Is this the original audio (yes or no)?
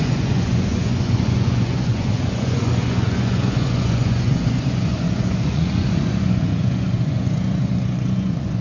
no